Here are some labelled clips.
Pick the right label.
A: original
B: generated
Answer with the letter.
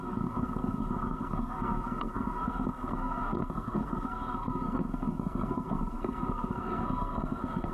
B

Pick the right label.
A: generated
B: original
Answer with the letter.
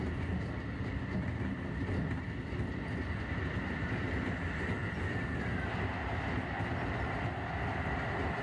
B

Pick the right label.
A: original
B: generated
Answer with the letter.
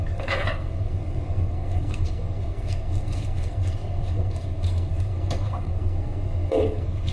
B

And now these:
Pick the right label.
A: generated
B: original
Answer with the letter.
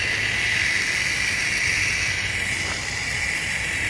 B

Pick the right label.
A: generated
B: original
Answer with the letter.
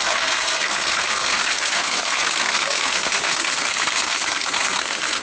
A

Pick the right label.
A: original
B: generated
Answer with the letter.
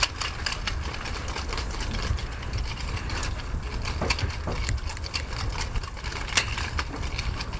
A